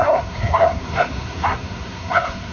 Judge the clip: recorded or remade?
remade